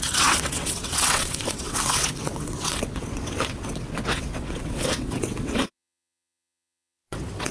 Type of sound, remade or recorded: remade